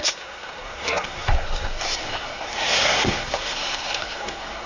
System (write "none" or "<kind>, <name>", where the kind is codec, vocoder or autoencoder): codec, SNAC